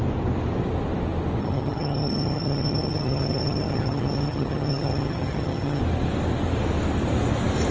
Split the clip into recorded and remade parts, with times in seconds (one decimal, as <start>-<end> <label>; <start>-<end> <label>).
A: 0.0-1.4 recorded; 1.4-5.8 remade; 5.8-7.7 recorded